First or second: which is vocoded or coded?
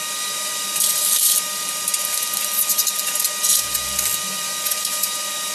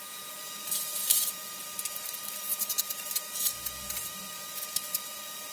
second